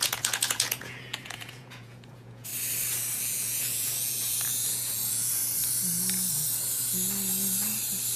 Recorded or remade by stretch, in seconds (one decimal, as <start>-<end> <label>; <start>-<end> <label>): 0.0-2.5 remade; 2.5-3.2 recorded; 3.2-5.4 remade; 5.4-8.2 recorded

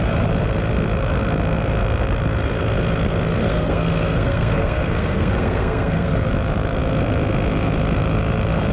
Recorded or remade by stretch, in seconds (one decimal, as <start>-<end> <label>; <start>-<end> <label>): 0.0-3.4 recorded; 3.4-6.3 remade; 6.3-8.7 recorded

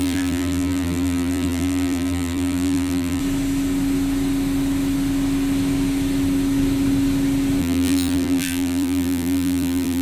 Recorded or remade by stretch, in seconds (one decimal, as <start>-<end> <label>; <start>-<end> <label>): 0.0-3.2 remade; 3.2-7.6 recorded; 7.6-10.0 remade

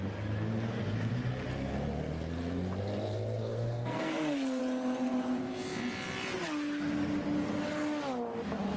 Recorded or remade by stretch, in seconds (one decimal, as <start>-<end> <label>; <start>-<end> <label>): 0.0-3.4 recorded; 3.4-4.6 remade; 4.6-8.8 recorded